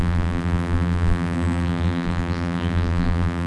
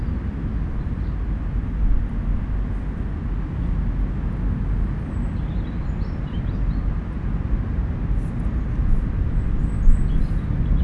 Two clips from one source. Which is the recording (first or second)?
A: second